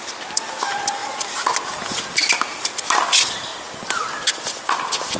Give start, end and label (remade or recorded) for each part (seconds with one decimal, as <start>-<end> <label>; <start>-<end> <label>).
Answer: 0.0-5.2 recorded